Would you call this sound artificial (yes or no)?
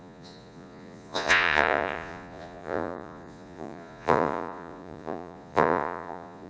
yes